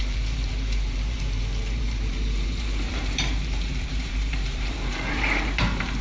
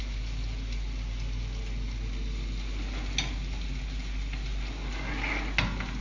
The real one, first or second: second